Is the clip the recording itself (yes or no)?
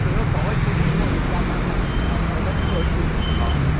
yes